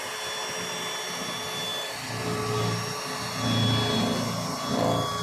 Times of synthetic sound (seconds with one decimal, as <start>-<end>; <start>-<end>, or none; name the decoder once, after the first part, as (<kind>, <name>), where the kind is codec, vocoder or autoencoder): none